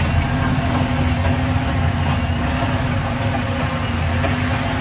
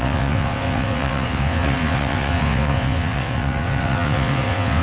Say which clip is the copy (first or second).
second